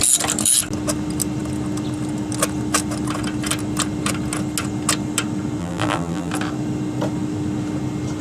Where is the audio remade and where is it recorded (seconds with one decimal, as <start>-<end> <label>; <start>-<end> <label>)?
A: 0.0-5.6 recorded; 5.6-6.3 remade; 6.3-8.2 recorded